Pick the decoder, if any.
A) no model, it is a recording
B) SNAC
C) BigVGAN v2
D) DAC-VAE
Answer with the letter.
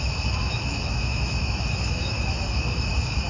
D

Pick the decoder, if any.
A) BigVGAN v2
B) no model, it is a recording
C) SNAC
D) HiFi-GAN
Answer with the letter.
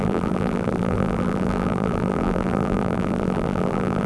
A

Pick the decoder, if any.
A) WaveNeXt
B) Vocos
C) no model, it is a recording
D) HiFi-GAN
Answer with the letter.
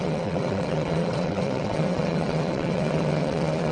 A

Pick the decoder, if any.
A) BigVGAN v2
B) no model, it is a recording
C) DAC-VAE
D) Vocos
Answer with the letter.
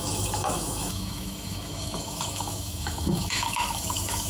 C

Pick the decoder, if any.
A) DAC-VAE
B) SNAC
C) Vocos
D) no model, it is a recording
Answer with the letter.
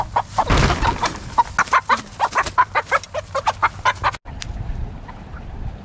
D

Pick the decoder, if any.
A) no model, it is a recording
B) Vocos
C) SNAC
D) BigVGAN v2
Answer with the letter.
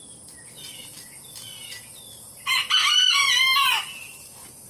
A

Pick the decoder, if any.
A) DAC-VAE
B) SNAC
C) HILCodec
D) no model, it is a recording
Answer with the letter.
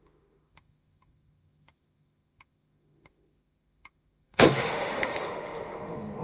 A